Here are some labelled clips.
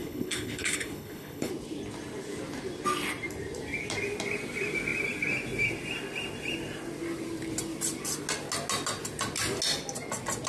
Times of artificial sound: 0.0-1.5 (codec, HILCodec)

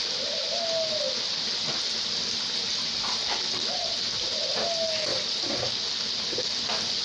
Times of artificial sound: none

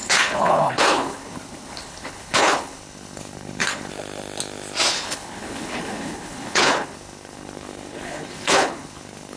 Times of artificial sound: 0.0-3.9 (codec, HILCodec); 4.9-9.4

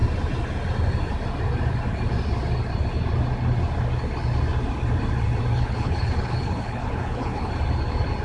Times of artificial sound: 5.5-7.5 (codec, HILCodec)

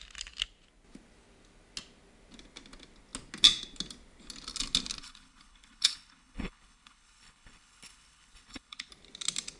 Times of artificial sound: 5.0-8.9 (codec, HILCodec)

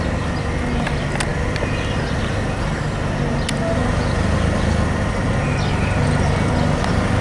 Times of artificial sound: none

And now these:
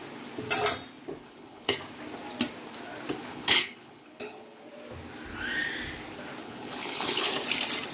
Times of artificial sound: 1.2-1.7 (codec, HILCodec); 3.3-4.6; 6.4-7.3

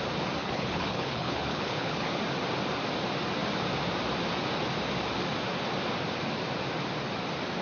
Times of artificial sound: 0.4-2.1 (codec, HILCodec)